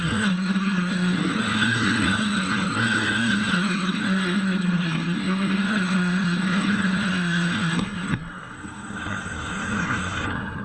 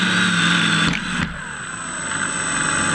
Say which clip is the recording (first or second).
second